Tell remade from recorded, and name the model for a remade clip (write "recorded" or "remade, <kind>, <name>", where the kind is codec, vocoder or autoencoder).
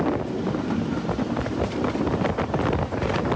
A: recorded